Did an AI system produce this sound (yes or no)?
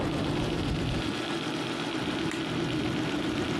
no